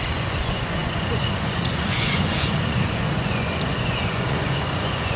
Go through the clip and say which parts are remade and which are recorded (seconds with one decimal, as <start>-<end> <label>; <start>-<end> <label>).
0.0-5.2 remade